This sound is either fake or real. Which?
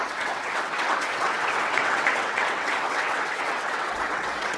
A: fake